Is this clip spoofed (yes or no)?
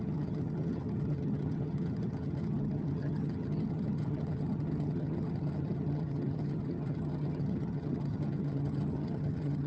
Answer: yes